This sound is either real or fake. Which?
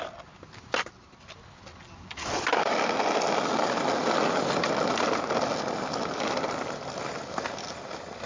real